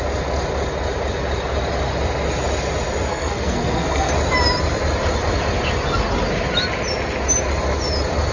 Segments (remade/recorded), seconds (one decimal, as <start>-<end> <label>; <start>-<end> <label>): 0.0-3.1 recorded; 3.1-4.1 remade; 4.1-8.3 recorded